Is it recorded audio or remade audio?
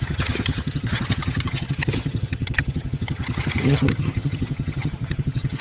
remade